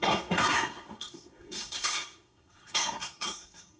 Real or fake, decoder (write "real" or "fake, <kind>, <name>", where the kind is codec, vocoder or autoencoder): fake, codec, SNAC